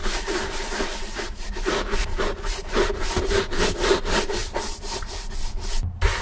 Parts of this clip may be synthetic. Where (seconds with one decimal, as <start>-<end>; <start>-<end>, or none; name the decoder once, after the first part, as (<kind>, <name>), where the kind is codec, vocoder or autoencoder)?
0.0-3.0 (vocoder, BigVGAN v2); 4.4-5.3